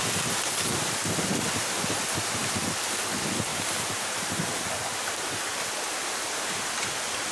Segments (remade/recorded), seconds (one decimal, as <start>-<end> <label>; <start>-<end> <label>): 0.0-3.5 recorded; 3.5-4.9 remade; 4.9-7.3 recorded